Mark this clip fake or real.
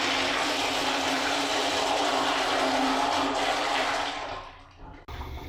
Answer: real